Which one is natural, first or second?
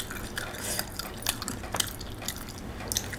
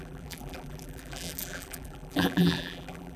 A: first